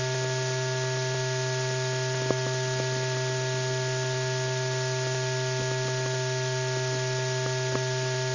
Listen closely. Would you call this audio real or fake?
real